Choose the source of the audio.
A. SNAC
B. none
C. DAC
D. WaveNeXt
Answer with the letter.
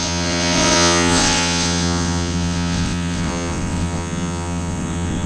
D